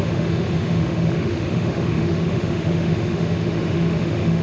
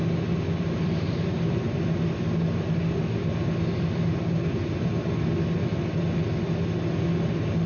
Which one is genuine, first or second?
second